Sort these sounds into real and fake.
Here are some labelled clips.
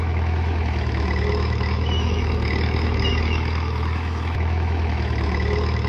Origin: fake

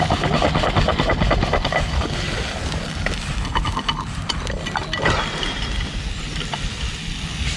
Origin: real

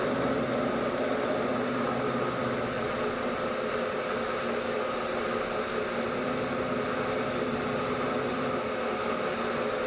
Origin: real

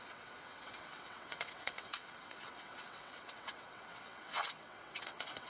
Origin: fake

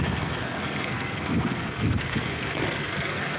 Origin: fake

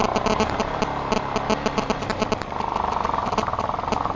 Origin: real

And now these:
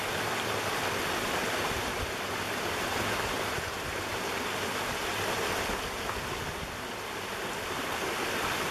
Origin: real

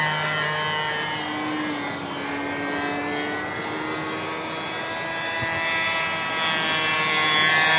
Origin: real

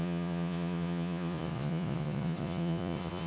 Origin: fake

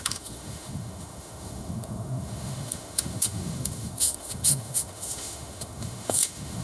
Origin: fake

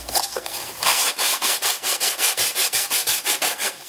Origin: fake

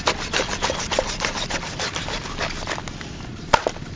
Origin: real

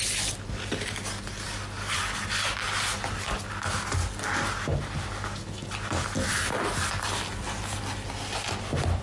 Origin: real